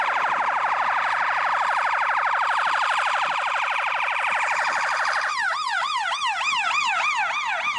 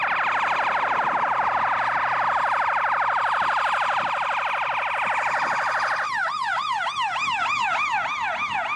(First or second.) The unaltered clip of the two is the second